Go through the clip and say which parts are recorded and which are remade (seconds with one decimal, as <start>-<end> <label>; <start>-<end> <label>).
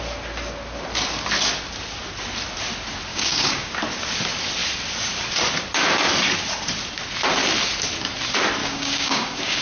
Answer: 0.0-3.1 recorded; 3.1-3.7 remade; 3.7-8.6 recorded; 8.6-9.6 remade